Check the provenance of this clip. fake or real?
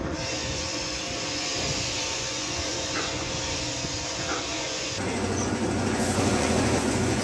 fake